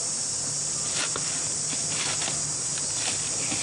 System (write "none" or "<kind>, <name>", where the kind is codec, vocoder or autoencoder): none